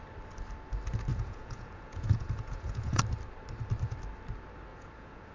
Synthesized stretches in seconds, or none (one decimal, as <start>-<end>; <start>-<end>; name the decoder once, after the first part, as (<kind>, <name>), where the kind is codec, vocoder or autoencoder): 1.1-3.0 (vocoder, Vocos); 4.7-5.3